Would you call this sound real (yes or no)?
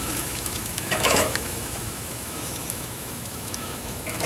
no